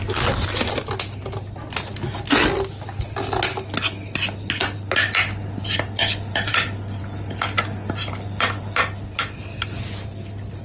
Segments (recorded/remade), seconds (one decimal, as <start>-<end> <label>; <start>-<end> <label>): 0.0-10.6 recorded